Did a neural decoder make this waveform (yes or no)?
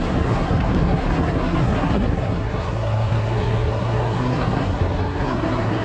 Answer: yes